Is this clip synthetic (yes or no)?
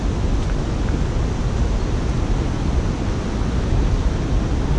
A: no